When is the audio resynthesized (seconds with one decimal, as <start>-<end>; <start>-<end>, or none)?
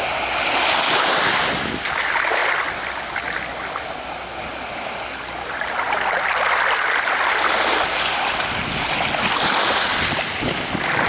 none